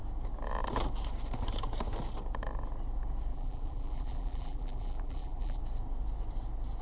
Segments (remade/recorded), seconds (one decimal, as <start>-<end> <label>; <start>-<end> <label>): 0.0-3.3 recorded; 3.3-5.6 remade; 5.6-6.8 recorded